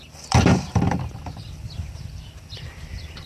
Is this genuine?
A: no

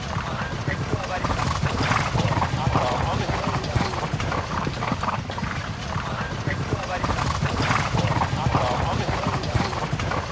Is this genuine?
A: no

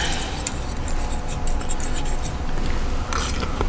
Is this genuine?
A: yes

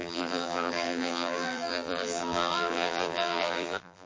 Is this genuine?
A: no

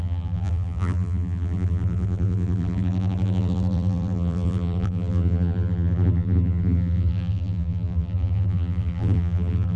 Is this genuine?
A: no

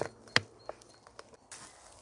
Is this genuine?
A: yes